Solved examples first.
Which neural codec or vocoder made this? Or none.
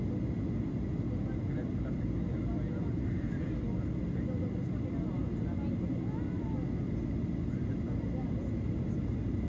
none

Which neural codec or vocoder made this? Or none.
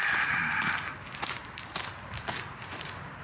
none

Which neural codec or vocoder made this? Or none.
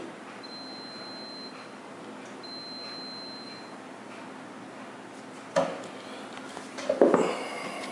none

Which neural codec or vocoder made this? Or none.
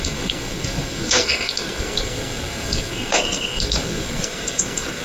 codec, SNAC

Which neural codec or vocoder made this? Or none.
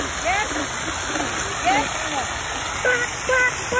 none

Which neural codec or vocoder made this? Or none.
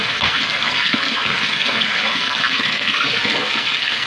codec, SNAC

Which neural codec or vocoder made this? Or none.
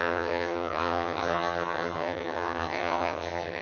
vocoder, HiFi-GAN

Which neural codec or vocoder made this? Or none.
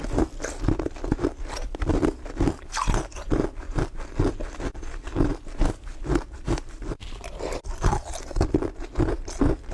none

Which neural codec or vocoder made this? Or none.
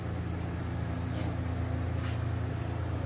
none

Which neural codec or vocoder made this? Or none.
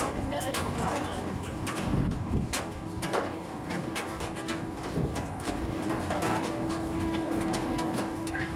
codec, DAC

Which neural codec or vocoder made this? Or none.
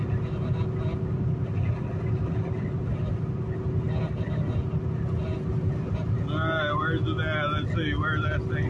none